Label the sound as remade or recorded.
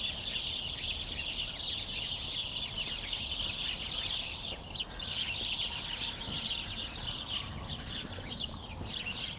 recorded